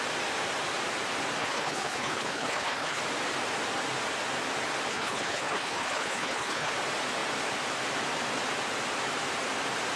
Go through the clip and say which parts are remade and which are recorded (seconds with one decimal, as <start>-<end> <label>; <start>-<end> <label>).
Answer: 0.0-1.4 recorded; 1.4-3.0 remade; 3.0-4.9 recorded; 4.9-6.7 remade; 6.7-10.0 recorded